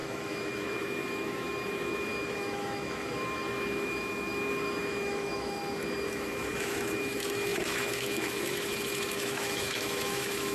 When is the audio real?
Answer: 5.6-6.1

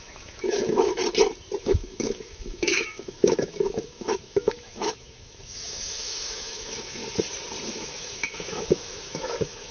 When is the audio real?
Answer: 1.0-1.6; 7.0-7.7

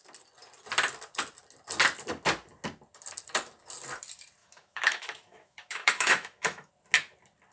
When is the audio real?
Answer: 0.0-4.4; 6.7-7.5

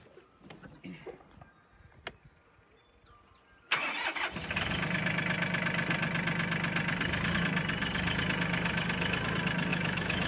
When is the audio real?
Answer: 0.0-9.7